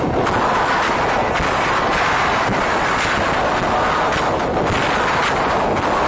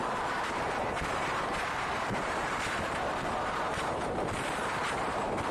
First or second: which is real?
first